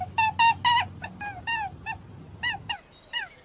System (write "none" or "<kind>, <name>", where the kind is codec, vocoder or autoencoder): none